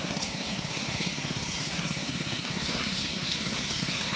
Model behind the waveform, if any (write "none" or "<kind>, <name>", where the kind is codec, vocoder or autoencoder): codec, SNAC